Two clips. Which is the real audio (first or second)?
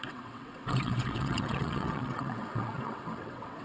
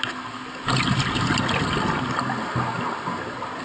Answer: second